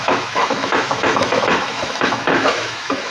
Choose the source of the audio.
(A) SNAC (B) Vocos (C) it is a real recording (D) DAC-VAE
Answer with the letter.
D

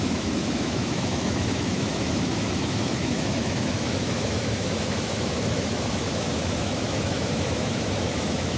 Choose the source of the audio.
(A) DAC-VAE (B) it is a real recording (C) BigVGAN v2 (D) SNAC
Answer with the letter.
A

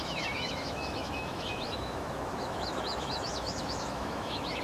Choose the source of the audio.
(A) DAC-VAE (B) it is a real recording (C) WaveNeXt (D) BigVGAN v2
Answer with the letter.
A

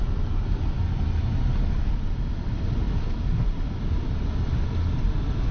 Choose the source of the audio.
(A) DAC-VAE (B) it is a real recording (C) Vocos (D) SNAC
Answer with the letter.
B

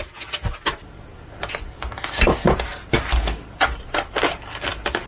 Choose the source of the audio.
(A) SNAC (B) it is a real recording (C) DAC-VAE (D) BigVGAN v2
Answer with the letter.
B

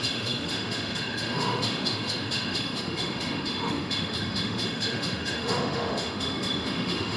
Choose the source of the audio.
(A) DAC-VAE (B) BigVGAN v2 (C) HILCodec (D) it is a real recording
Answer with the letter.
A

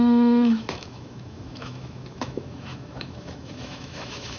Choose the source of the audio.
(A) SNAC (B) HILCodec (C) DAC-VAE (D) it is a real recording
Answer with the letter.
C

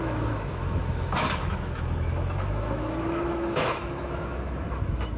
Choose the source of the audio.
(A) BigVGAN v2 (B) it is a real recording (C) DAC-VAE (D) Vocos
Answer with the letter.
C